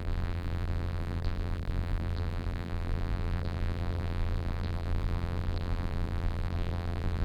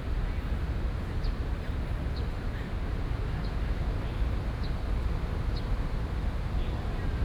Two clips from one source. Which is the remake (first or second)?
first